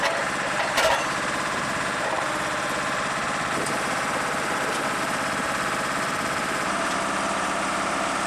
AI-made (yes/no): yes